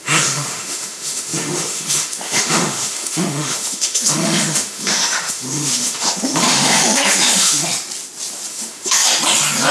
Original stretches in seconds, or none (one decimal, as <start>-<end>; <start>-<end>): 7.7-8.5; 9.0-9.7